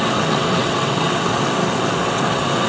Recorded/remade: remade